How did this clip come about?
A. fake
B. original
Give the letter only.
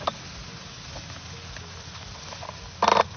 B